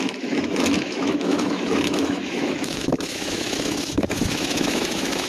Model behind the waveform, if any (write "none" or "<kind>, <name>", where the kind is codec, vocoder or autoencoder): autoencoder, DAC-VAE